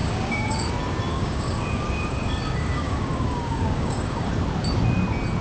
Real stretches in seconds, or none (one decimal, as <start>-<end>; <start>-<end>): 0.7-1.1; 4.3-5.4